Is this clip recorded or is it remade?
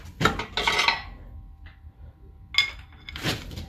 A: recorded